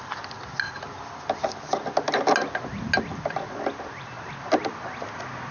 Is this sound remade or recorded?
recorded